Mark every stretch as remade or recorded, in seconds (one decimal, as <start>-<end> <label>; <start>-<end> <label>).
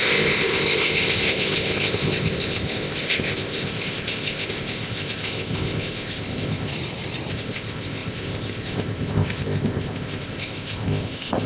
0.0-6.7 remade; 6.7-7.3 recorded; 7.3-11.5 remade